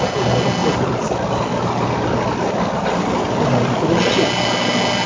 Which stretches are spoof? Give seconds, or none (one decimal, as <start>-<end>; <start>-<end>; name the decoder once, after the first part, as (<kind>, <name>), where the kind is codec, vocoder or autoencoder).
none